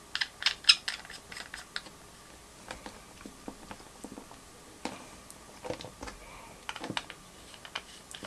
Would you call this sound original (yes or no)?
yes